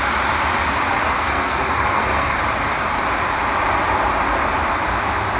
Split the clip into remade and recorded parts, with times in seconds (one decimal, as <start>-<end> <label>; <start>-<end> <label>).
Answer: 0.0-1.0 recorded; 1.0-2.4 remade; 2.4-5.4 recorded